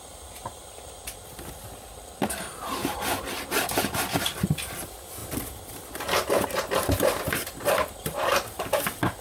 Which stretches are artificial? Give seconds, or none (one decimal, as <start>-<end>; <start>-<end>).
none